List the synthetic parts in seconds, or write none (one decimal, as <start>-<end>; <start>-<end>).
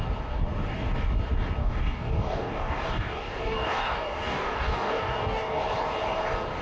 1.6-5.6